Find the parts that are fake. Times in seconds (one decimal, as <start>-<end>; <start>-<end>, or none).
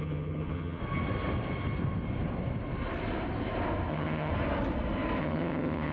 0.0-0.8; 3.9-4.3; 5.2-5.9